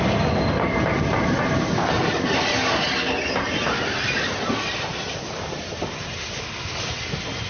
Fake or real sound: real